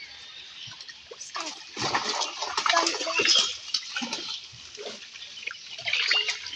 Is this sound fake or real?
real